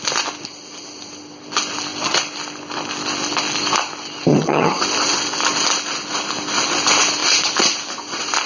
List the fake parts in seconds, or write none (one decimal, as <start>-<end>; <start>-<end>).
4.3-4.8